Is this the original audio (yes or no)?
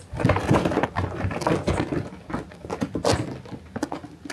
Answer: yes